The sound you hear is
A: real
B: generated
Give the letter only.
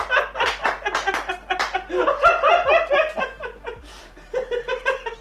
A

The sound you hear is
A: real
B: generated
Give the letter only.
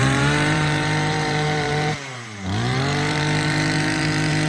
B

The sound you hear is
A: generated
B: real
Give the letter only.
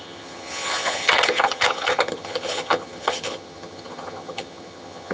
A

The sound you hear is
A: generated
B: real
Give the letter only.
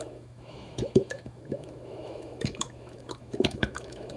A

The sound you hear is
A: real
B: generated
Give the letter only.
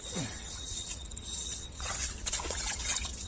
B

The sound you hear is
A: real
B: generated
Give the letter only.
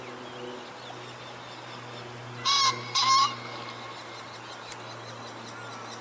A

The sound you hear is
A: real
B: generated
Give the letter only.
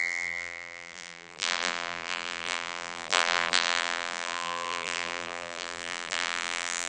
B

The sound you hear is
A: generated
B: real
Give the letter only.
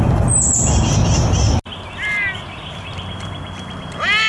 B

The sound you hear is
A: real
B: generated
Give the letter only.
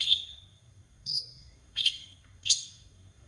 B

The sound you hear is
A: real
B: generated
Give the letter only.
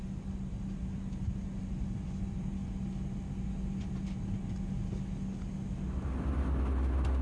A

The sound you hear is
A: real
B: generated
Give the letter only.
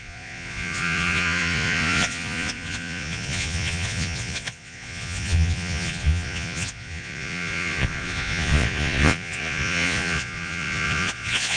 B